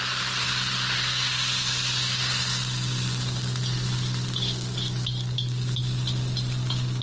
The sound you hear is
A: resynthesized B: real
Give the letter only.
B